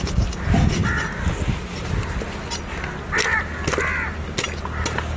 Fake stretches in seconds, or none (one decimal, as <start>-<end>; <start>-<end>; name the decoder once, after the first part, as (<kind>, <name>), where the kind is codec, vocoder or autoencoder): none